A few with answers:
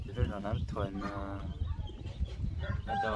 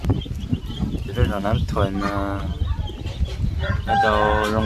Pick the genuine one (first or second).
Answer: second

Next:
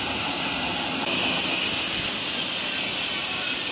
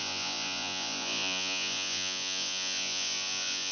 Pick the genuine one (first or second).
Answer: first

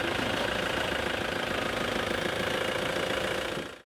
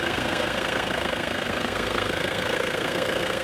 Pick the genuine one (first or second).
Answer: first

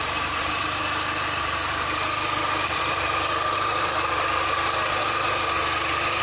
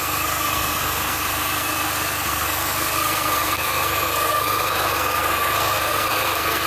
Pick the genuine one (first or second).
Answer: first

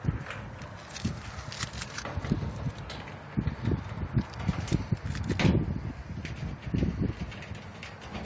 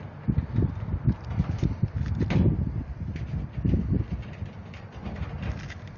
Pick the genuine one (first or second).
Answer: first